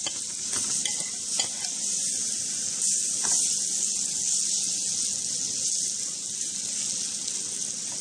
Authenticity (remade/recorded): recorded